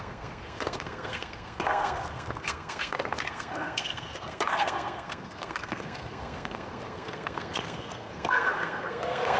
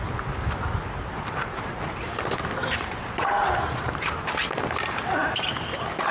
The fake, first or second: first